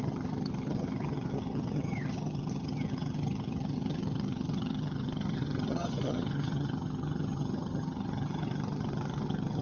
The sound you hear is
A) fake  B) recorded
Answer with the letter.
A